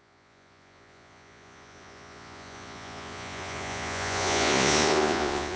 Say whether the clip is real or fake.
fake